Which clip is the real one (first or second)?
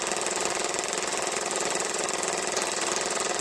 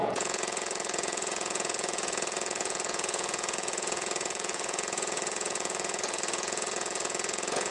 first